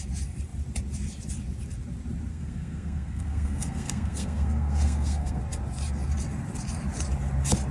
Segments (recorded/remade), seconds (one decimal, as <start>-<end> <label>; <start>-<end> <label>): 0.0-2.3 recorded; 2.3-5.4 remade; 5.4-7.7 recorded